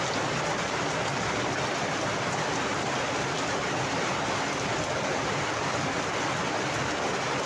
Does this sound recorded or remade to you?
recorded